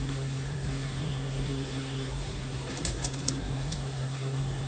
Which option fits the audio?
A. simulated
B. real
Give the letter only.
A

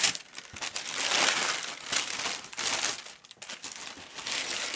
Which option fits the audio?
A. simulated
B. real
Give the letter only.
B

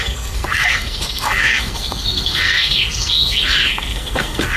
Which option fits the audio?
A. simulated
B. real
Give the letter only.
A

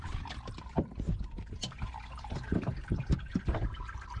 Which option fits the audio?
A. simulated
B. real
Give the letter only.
A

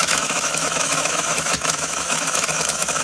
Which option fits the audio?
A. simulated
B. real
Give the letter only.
A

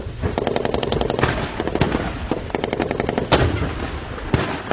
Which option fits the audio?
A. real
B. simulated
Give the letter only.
A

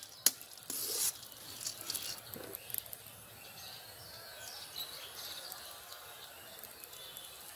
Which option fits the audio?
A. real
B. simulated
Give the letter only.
A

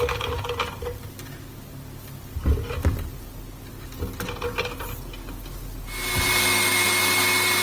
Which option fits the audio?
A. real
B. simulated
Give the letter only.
A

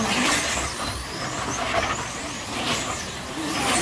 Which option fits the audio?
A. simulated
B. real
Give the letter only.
B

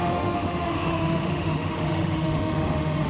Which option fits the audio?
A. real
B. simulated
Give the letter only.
B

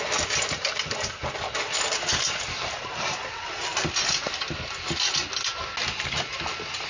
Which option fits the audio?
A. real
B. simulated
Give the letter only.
A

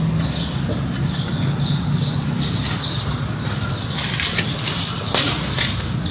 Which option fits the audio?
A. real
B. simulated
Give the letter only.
A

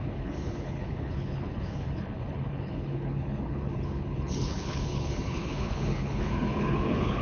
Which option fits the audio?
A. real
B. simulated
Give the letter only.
B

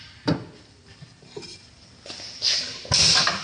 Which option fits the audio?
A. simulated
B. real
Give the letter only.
B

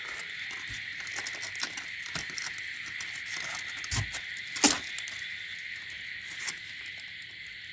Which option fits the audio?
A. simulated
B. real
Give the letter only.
B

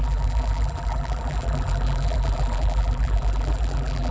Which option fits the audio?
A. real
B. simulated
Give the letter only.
B